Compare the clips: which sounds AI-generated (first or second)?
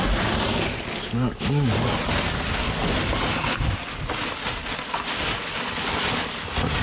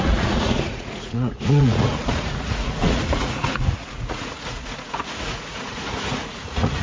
second